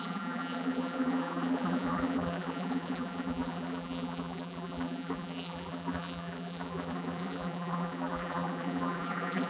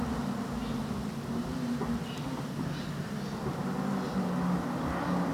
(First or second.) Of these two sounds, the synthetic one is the first